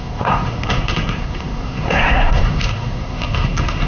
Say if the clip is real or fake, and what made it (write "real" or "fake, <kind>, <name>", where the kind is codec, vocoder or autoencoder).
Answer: fake, codec, SNAC